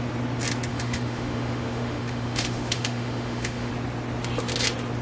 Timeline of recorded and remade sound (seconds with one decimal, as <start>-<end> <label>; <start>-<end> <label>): 0.0-0.7 recorded; 0.7-3.7 remade; 3.7-5.0 recorded